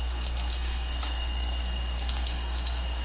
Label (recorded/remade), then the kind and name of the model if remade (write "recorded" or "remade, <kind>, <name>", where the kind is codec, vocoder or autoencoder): remade, codec, SNAC